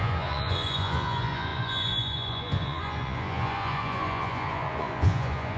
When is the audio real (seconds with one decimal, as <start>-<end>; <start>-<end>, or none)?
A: none